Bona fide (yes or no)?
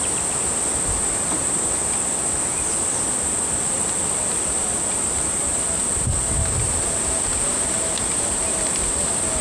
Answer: yes